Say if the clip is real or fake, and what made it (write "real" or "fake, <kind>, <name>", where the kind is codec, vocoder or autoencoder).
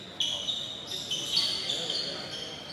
real